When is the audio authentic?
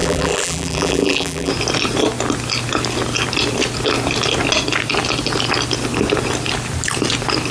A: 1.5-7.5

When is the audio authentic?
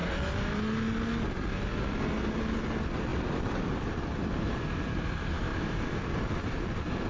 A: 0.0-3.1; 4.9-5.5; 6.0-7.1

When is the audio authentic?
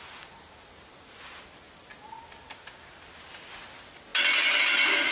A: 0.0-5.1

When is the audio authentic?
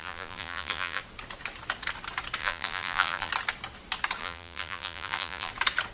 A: 1.0-2.4; 3.3-4.2; 5.5-5.9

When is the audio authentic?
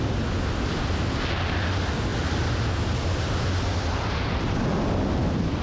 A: 0.0-4.7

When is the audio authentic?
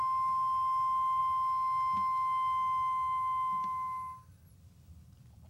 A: 0.0-5.5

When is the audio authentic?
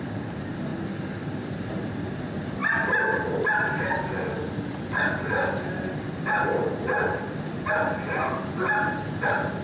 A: 0.0-2.6; 3.9-6.6; 7.7-9.6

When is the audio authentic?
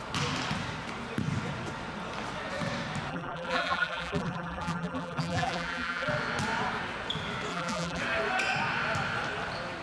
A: 0.0-3.1; 6.1-7.5; 8.0-9.8